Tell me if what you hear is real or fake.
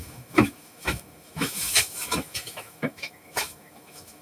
fake